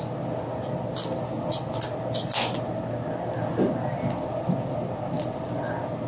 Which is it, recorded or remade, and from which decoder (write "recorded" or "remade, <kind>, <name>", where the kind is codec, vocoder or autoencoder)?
recorded